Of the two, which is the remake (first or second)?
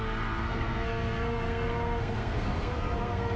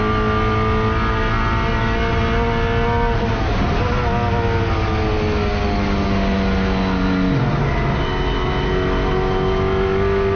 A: first